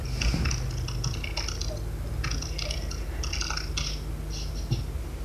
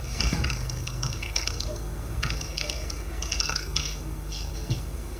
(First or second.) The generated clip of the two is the second